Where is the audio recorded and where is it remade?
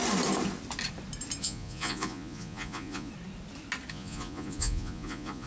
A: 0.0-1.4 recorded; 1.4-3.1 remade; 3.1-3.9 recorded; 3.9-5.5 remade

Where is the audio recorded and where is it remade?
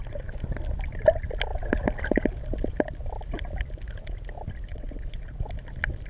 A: 0.0-4.7 recorded; 4.7-5.4 remade; 5.4-6.1 recorded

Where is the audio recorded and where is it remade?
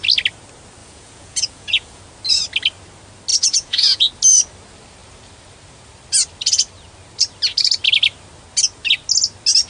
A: 0.0-0.8 recorded; 0.8-2.0 remade; 2.0-3.3 recorded; 3.3-4.1 remade; 4.1-9.7 recorded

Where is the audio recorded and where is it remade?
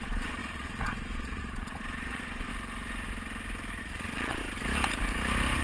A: 0.0-2.5 remade; 2.5-3.8 recorded; 3.8-4.4 remade; 4.4-5.6 recorded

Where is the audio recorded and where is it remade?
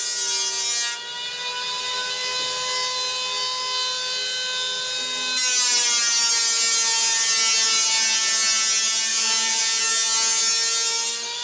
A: 0.0-9.1 recorded; 9.1-9.8 remade; 9.8-11.4 recorded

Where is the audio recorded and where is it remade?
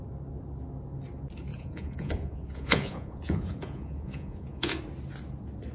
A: 0.0-1.5 recorded; 1.5-4.8 remade; 4.8-5.7 recorded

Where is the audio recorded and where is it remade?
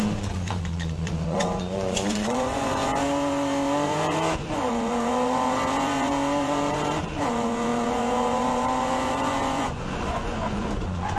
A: 0.0-11.2 remade